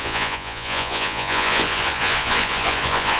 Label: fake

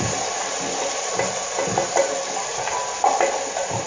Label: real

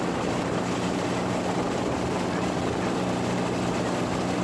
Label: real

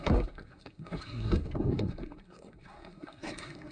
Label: fake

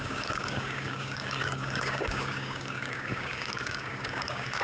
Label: fake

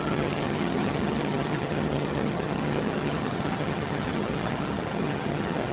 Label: fake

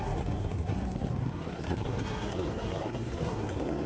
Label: fake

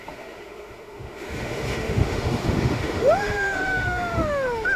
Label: fake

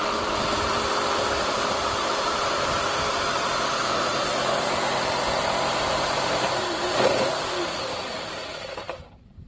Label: fake